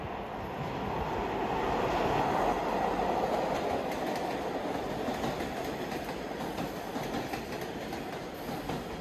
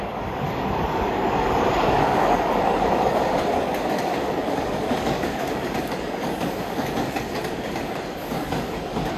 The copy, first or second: second